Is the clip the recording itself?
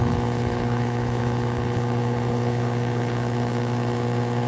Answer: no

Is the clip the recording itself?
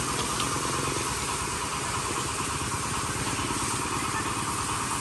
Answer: yes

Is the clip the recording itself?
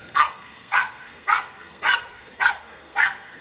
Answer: no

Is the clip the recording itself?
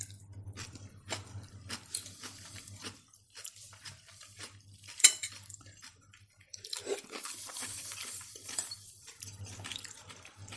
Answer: no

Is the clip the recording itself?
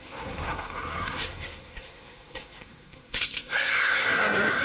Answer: no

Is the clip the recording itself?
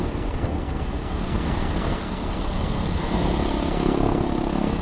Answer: no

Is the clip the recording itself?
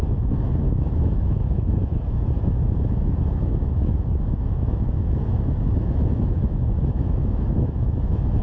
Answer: no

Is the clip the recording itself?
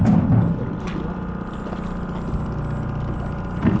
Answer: yes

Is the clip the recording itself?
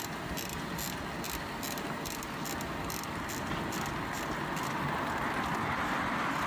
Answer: yes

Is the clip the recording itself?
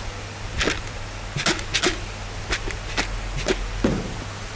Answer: yes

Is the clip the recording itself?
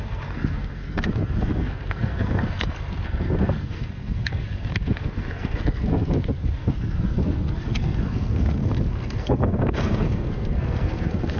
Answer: no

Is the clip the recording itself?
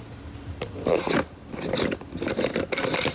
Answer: yes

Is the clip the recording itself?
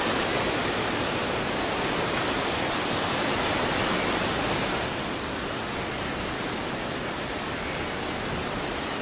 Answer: yes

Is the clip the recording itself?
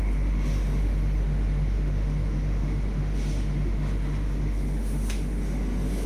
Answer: no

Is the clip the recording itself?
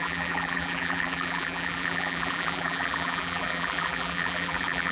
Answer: no